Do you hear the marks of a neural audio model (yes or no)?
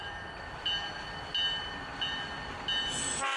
no